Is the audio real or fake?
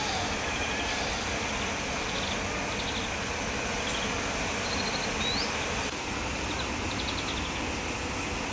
real